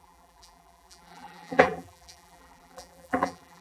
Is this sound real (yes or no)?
no